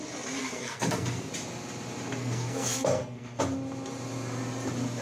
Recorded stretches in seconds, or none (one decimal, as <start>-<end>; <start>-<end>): 0.0-0.4; 1.3-2.2; 3.4-5.0